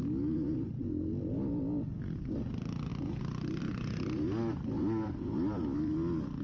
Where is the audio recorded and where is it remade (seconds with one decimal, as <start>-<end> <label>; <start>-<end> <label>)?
0.0-2.9 recorded; 2.9-3.6 remade; 3.6-4.4 recorded; 4.4-6.4 remade

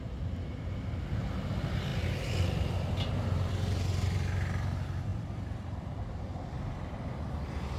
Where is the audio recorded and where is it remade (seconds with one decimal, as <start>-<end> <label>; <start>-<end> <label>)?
0.0-5.1 recorded; 5.1-6.3 remade; 6.3-7.8 recorded

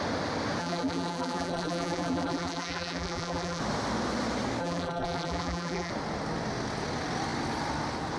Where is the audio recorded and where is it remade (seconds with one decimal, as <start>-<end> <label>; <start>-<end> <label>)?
0.0-0.6 recorded; 0.6-3.6 remade; 3.6-4.6 recorded; 4.6-5.9 remade; 5.9-8.2 recorded

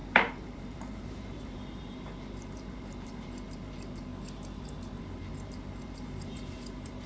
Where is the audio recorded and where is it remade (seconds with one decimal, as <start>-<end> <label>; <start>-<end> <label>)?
0.0-4.1 remade; 4.1-5.0 recorded; 5.0-7.1 remade

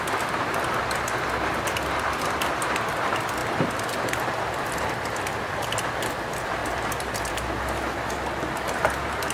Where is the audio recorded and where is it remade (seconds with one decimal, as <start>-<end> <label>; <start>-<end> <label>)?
0.0-6.6 recorded; 6.6-7.3 remade; 7.3-9.3 recorded